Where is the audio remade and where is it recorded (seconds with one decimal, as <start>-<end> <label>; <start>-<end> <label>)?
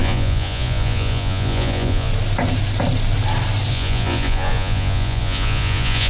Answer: 0.0-2.1 remade; 2.1-3.7 recorded; 3.7-6.1 remade